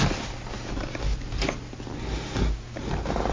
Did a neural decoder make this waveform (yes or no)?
no